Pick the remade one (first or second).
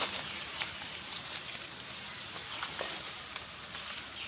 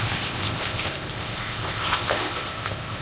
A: second